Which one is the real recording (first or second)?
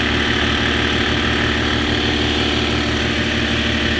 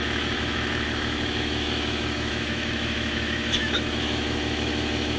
first